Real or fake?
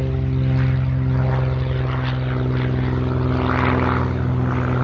real